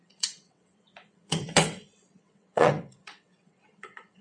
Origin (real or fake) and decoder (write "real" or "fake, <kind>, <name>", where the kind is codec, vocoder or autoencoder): fake, vocoder, WaveNeXt